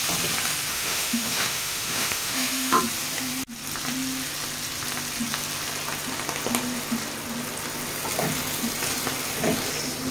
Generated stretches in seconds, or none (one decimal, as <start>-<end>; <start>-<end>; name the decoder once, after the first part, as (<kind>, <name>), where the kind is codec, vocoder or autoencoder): 0.7-2.8 (autoencoder, DAC-VAE)